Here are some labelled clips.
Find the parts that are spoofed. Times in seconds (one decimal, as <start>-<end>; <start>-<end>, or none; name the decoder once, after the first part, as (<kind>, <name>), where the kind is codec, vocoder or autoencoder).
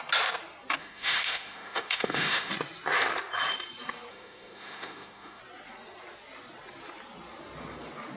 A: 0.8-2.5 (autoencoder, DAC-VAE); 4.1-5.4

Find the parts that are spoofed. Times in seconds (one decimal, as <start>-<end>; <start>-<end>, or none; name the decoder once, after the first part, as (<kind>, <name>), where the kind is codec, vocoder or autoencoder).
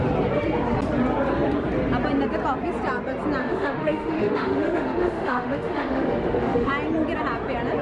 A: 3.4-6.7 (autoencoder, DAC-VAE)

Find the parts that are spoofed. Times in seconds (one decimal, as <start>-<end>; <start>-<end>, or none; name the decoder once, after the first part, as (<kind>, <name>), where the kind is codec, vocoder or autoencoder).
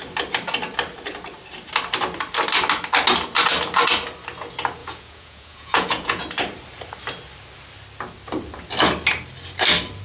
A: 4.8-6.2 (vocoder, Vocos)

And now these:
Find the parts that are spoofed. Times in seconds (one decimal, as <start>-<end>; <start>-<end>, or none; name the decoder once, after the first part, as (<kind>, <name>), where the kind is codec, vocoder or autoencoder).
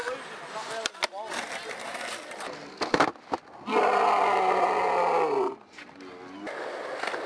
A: none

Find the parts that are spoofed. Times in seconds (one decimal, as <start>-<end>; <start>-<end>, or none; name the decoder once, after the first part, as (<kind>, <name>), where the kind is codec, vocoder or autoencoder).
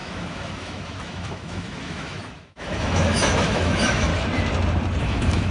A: 0.0-4.1 (autoencoder, DAC-VAE); 5.0-5.5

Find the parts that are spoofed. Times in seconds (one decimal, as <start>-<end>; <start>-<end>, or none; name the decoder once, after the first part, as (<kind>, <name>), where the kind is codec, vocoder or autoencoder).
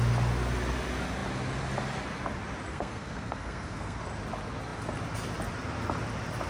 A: 2.7-4.0 (codec, SNAC)